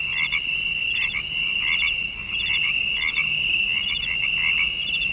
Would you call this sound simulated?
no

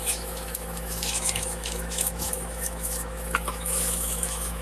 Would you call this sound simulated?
yes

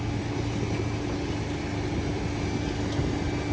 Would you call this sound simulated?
no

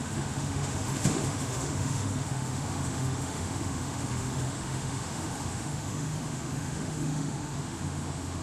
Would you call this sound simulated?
yes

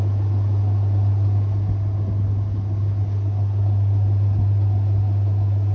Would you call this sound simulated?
no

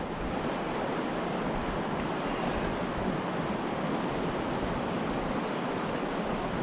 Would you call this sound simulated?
no